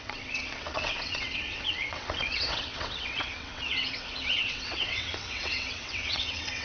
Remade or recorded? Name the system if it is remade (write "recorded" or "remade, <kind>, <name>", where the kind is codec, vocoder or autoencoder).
remade, vocoder, WaveNeXt